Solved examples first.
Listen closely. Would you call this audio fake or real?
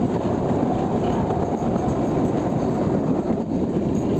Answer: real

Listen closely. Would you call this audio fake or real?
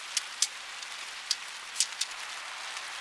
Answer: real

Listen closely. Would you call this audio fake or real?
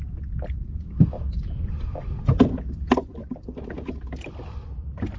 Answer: real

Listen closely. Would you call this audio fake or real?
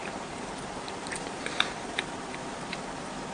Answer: fake